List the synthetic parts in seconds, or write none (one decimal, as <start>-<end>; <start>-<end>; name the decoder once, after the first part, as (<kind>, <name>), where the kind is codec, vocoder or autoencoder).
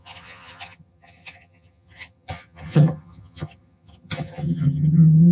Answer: 0.0-5.3 (vocoder, HiFi-GAN)